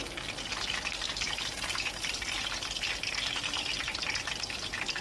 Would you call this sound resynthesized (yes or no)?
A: no